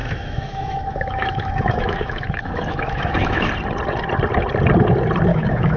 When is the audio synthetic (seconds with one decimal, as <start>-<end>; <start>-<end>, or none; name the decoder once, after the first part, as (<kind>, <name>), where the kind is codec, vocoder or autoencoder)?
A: 0.0-3.5 (autoencoder, DAC-VAE); 5.3-5.8